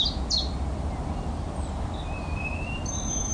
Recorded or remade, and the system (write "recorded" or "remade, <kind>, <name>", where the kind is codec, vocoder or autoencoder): recorded